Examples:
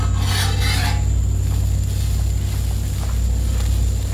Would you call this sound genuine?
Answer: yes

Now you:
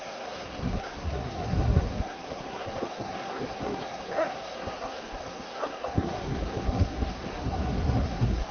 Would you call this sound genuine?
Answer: no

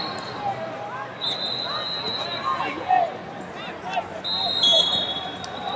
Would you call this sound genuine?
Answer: yes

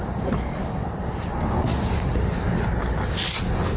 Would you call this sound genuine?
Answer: yes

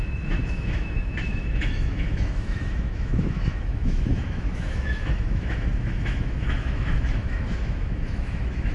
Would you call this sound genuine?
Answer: no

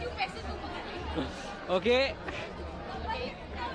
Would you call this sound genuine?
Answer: yes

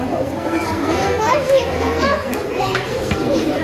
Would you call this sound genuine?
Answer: no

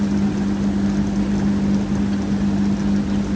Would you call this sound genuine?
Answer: yes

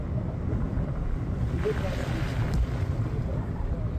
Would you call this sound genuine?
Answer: yes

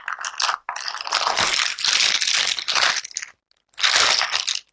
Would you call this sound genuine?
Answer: yes